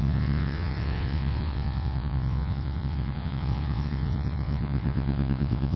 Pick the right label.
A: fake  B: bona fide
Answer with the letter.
A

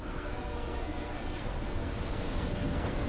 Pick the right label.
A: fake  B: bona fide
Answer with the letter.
A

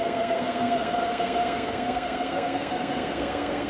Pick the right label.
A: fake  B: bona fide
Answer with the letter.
A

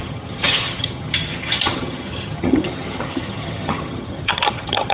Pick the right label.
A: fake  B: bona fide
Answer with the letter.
A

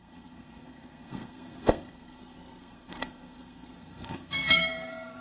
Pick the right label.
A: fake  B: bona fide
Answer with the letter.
A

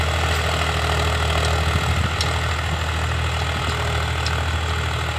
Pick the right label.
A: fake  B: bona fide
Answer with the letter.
B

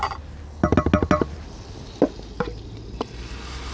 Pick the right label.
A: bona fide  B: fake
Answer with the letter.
A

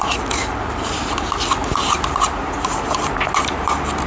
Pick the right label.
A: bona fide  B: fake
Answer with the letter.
A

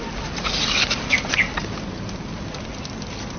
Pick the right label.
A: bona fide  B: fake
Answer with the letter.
A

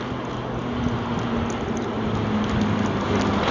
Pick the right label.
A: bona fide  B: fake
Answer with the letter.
A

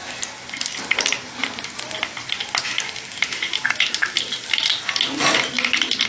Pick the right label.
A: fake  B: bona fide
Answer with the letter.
B